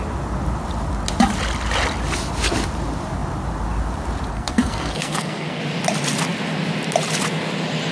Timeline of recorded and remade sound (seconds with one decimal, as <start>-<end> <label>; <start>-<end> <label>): 0.0-4.3 recorded; 4.3-5.6 remade; 5.6-7.9 recorded